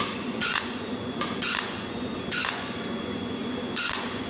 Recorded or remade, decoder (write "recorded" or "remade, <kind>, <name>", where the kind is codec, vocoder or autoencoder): remade, vocoder, Vocos